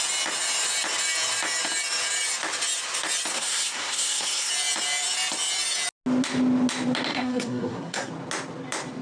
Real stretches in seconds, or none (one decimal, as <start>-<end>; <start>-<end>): 0.0-3.3; 4.5-7.1; 8.1-9.0